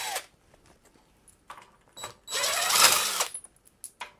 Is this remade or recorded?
recorded